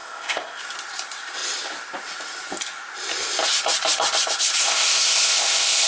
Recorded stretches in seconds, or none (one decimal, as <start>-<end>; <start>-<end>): 0.6-4.6